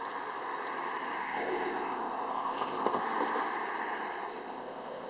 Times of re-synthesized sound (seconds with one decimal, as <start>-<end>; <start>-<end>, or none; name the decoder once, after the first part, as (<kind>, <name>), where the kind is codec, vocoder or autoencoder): 1.2-3.0 (codec, ZipCodec); 4.3-5.1